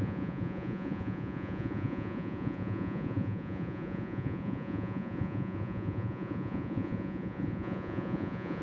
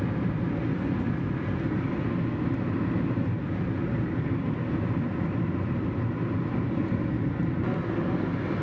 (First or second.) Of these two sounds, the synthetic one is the first